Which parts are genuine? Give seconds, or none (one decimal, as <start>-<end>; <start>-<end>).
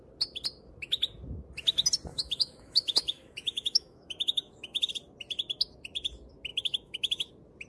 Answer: 0.0-2.1; 4.9-6.5; 7.3-7.7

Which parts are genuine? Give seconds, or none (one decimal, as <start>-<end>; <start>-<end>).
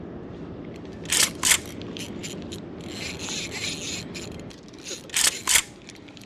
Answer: 0.0-6.3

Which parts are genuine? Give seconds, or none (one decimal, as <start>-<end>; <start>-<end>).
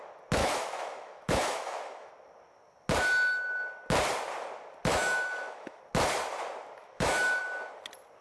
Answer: 0.0-0.4; 2.1-4.9; 5.8-6.8; 7.4-8.2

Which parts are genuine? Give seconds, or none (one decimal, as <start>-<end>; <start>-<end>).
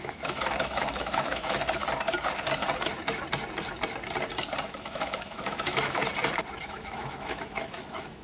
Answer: 1.8-4.6; 6.0-6.6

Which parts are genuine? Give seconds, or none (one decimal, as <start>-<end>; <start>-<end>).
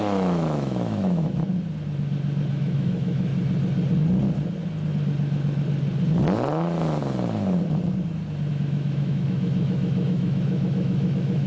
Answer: 1.5-2.5; 3.3-8.5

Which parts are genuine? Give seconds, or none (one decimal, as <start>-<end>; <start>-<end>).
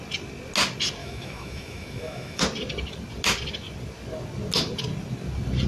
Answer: 0.0-1.0; 2.4-5.7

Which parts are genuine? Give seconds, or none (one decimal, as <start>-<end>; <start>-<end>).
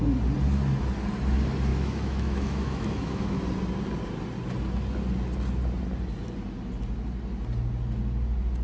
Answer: 0.0-1.7; 3.4-8.6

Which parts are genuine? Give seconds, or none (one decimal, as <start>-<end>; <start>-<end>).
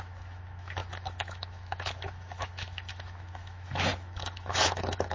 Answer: none